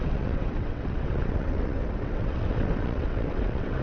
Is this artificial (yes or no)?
yes